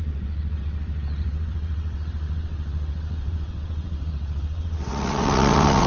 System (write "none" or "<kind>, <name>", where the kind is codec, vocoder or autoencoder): vocoder, WaveNeXt